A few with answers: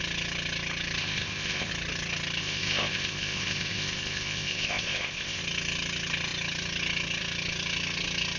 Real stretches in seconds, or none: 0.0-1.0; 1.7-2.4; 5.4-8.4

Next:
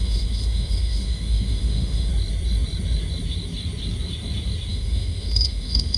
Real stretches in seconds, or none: 2.1-4.7

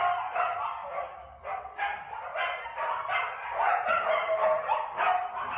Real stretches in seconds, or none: 0.0-5.6

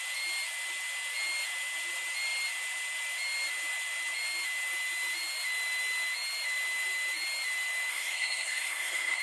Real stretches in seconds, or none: 0.0-7.9

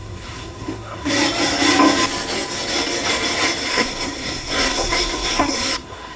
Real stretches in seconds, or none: 1.1-3.7

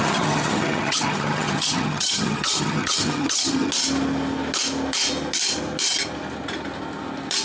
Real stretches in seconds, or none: 3.7-7.4

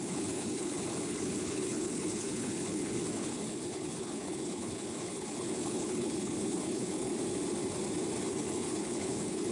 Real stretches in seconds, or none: 7.1-8.3

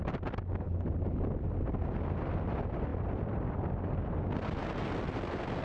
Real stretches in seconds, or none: 0.0-5.6